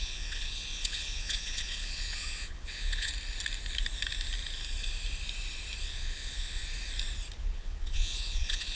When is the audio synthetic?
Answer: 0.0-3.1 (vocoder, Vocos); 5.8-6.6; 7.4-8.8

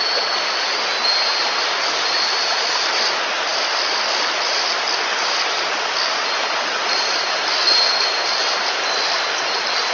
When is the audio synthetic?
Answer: none

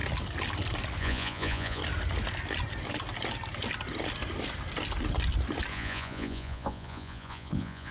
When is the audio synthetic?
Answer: 1.0-1.8 (vocoder, Vocos); 5.7-7.9

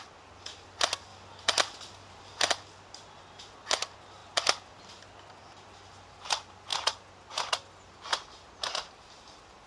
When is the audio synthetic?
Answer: none

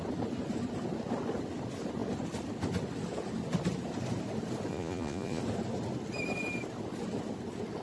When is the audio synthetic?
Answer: 4.7-5.4 (vocoder, Vocos)

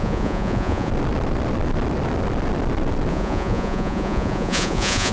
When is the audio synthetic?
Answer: 0.0-0.9 (vocoder, Vocos); 3.1-5.1

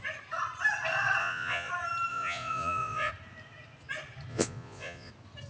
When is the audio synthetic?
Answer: 1.2-1.7 (vocoder, Vocos); 2.1-3.1; 4.3-5.1

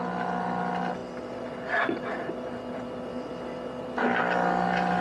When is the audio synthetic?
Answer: none